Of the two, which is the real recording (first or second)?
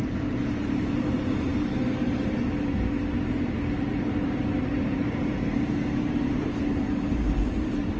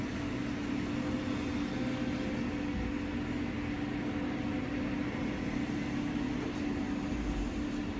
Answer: second